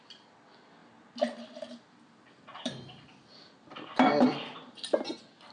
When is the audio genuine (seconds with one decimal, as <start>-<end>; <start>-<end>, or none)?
0.0-2.5; 5.1-5.5